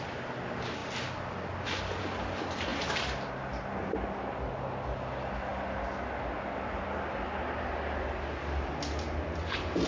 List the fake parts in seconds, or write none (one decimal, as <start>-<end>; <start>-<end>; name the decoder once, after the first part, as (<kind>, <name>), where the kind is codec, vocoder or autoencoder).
none